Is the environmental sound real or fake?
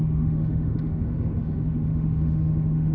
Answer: fake